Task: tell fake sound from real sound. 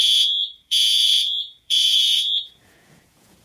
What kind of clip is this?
fake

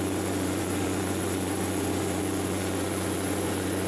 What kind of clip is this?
fake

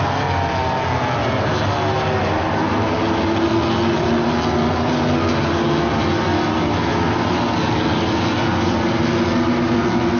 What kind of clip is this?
real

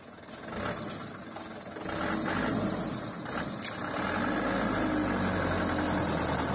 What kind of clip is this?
real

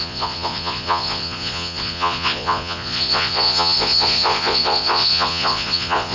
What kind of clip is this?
fake